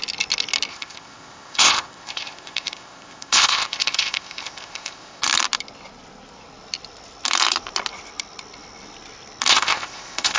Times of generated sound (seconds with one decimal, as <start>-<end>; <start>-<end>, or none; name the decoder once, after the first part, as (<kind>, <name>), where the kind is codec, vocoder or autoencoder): 0.7-5.2 (codec, ZipCodec); 9.5-10.4